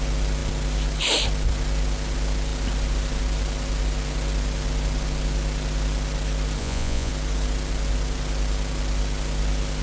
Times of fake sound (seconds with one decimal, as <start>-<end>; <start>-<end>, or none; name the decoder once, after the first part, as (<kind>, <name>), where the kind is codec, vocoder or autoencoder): 6.6-7.1 (vocoder, Vocos)